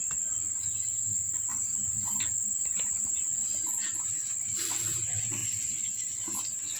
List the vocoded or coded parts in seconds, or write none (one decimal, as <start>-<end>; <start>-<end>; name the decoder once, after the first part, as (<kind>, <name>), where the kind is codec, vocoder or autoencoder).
1.5-3.0 (vocoder, BigVGAN v2); 3.4-5.0; 5.4-6.8